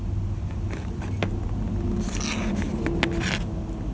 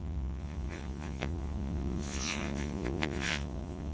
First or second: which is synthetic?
second